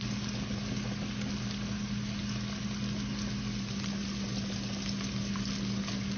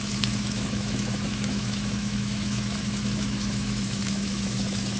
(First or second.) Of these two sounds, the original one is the first